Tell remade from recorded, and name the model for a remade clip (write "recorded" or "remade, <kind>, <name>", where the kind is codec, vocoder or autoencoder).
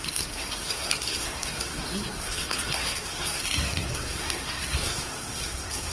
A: remade, codec, SNAC